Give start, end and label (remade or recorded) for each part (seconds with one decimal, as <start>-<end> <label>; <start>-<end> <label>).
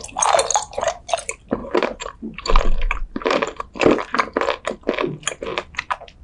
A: 0.0-0.5 recorded; 0.5-1.1 remade; 1.1-1.6 recorded; 1.6-3.6 remade; 3.6-6.2 recorded